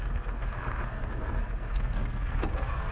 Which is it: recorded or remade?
remade